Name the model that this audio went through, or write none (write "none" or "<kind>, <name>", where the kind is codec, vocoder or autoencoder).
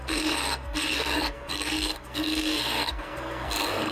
codec, SNAC